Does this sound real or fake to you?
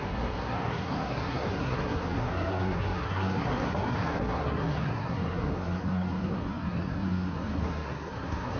fake